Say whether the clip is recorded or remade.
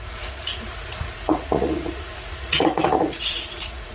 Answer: remade